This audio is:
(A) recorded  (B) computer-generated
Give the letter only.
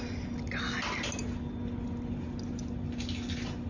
A